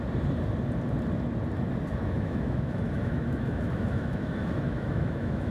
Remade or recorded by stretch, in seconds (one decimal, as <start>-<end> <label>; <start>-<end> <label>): 0.0-1.9 recorded; 1.9-5.5 remade